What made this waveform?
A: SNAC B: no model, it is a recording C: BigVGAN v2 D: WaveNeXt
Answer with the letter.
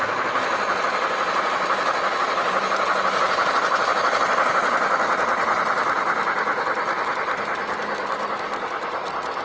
B